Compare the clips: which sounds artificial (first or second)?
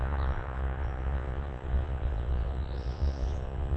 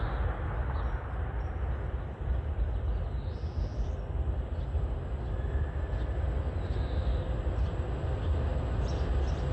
first